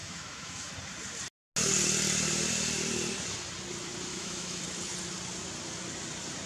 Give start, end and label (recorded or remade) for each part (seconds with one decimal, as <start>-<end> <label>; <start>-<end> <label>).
0.0-0.7 remade; 0.7-4.1 recorded; 4.1-4.6 remade; 4.6-6.5 recorded